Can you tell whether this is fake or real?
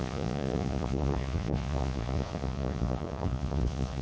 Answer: fake